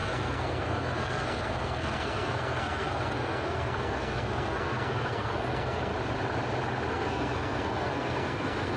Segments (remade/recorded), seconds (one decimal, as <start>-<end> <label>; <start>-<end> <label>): 0.0-5.9 remade; 5.9-6.9 recorded; 6.9-8.8 remade

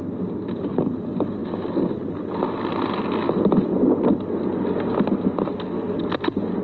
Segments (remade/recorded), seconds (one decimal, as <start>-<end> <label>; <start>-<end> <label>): 0.0-6.6 recorded

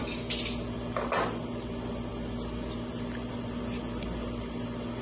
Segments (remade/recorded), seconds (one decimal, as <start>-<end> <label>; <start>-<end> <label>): 0.0-5.0 recorded